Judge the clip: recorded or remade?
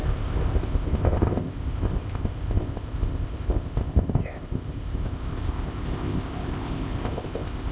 remade